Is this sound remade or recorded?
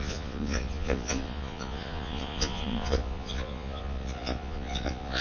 remade